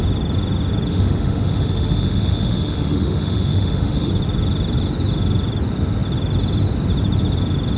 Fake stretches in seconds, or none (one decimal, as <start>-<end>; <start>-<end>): 0.9-4.1